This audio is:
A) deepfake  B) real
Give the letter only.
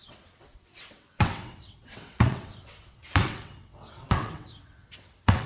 A